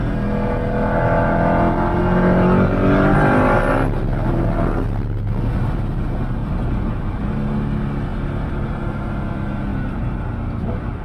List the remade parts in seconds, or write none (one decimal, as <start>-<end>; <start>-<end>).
6.4-7.2; 8.1-8.7